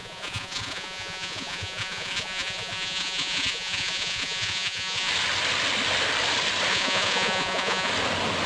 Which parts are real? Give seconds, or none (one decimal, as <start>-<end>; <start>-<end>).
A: 5.1-6.7; 7.9-8.5